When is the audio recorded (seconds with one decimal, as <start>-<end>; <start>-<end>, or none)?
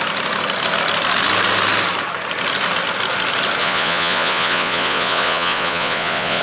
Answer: 0.0-3.6